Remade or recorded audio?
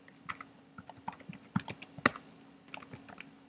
recorded